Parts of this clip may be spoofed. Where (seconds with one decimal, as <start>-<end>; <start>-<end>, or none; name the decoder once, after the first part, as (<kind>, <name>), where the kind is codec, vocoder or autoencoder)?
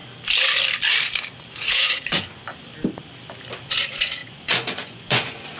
1.4-2.5 (vocoder, Vocos); 3.6-5.6